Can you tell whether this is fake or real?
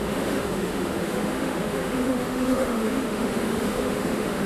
fake